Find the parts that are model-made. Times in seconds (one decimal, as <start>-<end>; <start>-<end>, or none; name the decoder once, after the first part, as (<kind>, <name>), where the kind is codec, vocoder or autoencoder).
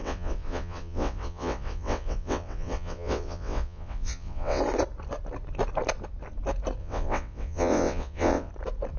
0.0-4.6 (vocoder, WaveNeXt); 6.8-8.5